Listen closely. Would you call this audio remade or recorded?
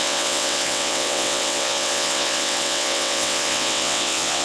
remade